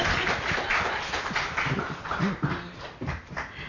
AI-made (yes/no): no